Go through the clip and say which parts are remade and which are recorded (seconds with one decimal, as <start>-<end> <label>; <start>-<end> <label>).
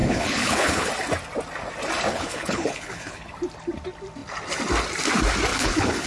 0.0-0.9 remade; 0.9-2.1 recorded; 2.1-3.3 remade; 3.3-5.5 recorded; 5.5-6.1 remade